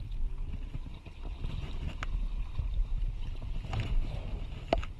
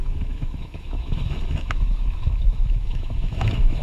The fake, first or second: second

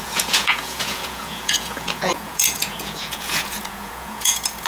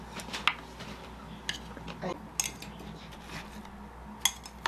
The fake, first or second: first